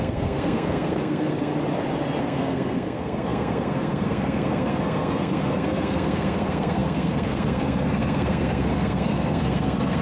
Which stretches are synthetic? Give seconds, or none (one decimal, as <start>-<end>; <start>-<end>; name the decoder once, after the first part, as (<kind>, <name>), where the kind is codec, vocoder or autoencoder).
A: 0.0-1.5 (codec, SNAC); 2.2-10.0